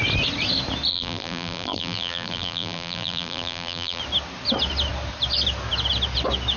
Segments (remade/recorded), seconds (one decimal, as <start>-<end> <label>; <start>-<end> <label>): 0.0-0.9 recorded; 0.9-4.0 remade; 4.0-6.6 recorded